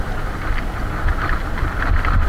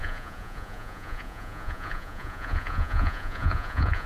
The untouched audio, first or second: first